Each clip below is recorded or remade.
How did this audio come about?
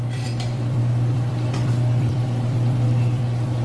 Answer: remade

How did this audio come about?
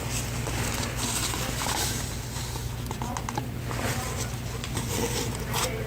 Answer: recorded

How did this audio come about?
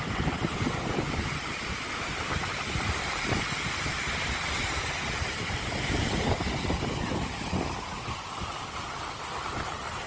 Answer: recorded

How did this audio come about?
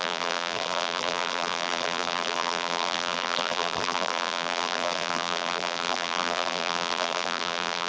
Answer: remade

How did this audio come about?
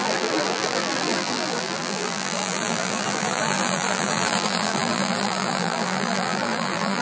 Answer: remade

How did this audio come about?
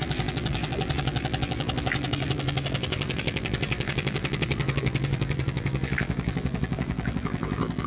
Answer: remade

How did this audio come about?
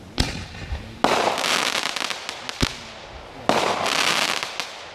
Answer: recorded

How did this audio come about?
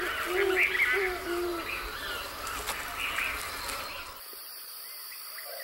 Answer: recorded